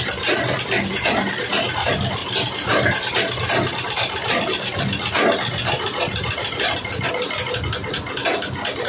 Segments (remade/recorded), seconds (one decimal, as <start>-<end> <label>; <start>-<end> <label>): 0.0-8.9 recorded